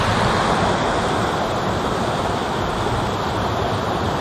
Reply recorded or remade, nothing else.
recorded